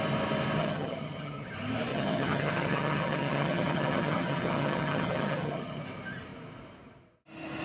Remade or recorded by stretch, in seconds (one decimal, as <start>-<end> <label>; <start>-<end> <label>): 0.0-0.6 recorded; 0.6-1.5 remade; 1.5-1.9 recorded; 1.9-5.8 remade; 5.8-7.6 recorded